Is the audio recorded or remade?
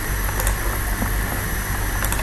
recorded